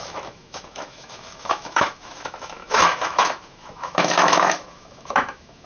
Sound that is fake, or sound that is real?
fake